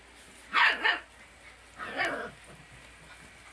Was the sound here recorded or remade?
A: recorded